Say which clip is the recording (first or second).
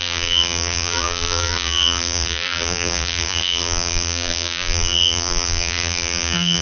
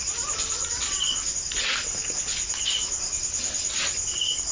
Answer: second